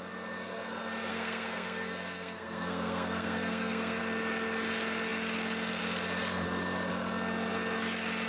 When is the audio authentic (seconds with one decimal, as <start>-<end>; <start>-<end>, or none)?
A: 0.0-1.1; 4.0-8.3